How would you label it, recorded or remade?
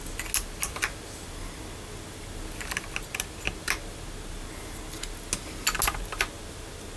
recorded